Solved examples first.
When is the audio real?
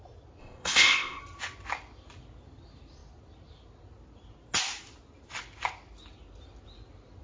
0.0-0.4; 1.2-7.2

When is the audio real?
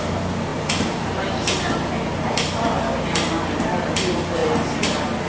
0.0-5.3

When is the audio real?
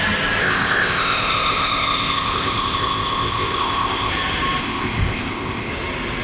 0.0-0.4; 4.1-4.6; 5.7-6.2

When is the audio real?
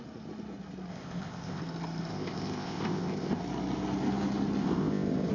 0.0-0.9; 1.6-2.1; 3.4-4.6